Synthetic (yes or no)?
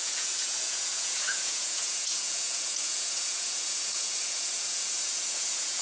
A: yes